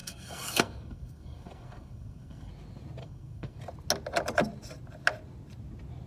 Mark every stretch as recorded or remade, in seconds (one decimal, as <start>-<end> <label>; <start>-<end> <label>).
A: 0.0-2.5 remade; 2.5-3.0 recorded; 3.0-3.6 remade; 3.6-6.1 recorded